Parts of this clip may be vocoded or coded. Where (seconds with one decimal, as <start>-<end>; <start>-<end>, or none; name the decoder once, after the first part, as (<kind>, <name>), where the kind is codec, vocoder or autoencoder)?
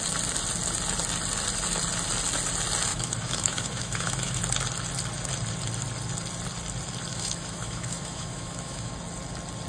2.9-4.4 (autoencoder, DAC-VAE); 7.1-8.9